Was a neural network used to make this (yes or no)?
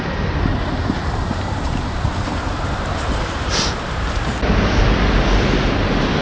no